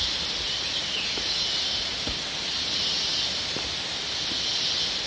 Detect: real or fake real